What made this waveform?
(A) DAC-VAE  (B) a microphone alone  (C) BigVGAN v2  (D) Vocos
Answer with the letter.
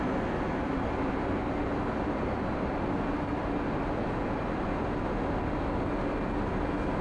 B